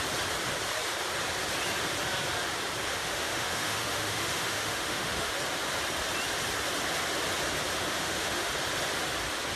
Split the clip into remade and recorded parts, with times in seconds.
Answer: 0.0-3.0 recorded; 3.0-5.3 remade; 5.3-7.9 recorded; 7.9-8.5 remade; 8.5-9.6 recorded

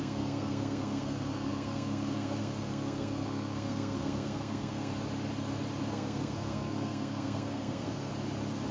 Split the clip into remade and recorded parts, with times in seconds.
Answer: 0.0-4.9 remade; 4.9-5.9 recorded; 5.9-8.1 remade; 8.1-8.7 recorded

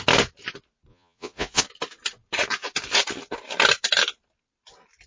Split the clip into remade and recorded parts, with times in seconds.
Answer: 0.0-0.9 recorded; 0.9-1.6 remade; 1.6-5.1 recorded

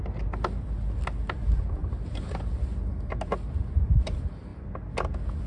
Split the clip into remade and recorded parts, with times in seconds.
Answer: 0.0-1.8 recorded; 1.8-2.5 remade; 2.5-5.5 recorded

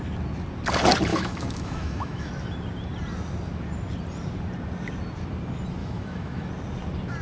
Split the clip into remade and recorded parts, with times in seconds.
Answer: 0.0-1.1 recorded; 1.1-2.3 remade; 2.3-5.8 recorded; 5.8-6.5 remade; 6.5-7.2 recorded